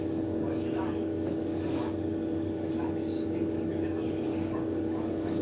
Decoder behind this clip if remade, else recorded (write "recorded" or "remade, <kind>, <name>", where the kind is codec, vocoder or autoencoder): remade, codec, DAC